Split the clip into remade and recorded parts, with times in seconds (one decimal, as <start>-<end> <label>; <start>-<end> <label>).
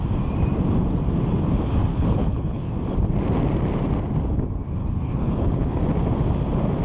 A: 0.0-1.9 recorded; 1.9-2.7 remade; 2.7-4.8 recorded; 4.8-5.8 remade; 5.8-6.8 recorded